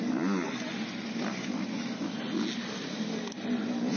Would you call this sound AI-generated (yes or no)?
no